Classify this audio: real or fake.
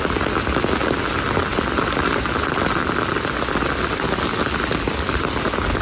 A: real